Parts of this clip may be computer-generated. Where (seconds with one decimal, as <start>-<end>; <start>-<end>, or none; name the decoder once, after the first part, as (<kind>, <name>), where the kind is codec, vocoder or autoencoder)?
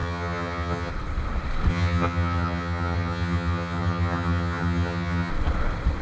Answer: 0.0-0.9 (vocoder, HiFi-GAN); 1.7-5.3